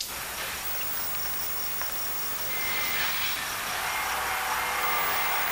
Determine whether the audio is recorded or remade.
recorded